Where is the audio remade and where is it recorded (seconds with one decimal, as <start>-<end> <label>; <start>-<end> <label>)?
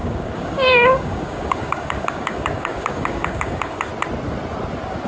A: 0.0-3.9 remade; 3.9-5.1 recorded